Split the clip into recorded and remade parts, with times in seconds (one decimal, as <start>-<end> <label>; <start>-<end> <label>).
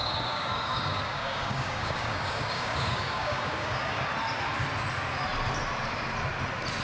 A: 0.0-4.1 remade; 4.1-6.8 recorded